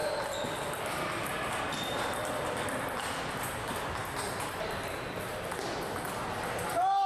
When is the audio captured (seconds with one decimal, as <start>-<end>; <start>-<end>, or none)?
0.0-7.1